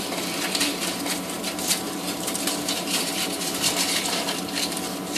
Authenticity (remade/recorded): remade